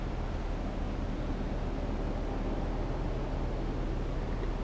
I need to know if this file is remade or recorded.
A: recorded